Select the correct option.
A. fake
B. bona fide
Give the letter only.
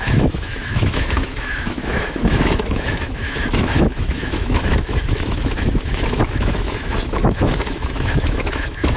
A